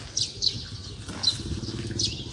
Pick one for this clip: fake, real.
real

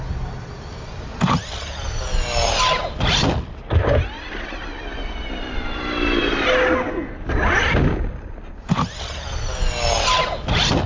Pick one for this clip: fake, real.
real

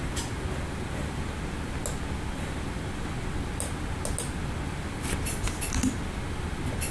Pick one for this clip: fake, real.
real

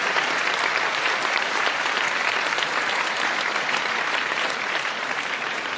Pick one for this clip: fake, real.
fake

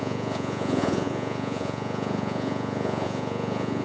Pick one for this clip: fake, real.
fake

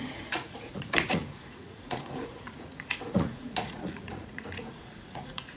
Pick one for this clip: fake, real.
fake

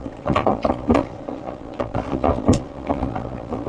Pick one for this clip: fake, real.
fake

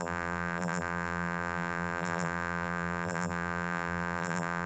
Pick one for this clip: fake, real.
fake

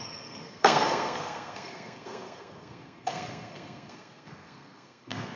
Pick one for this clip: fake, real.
fake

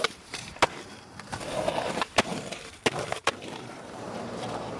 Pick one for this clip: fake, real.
fake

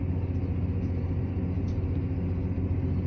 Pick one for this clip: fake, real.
real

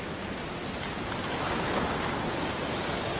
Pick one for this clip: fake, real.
real